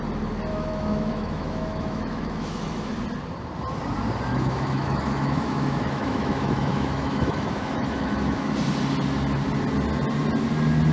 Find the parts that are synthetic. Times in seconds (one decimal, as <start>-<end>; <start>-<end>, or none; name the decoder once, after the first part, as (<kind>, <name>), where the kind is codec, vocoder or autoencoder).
0.5-2.9 (autoencoder, DAC-VAE); 4.3-8.5